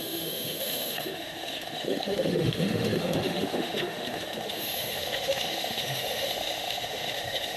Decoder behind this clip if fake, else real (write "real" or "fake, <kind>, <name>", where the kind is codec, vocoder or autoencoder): fake, autoencoder, DAC-VAE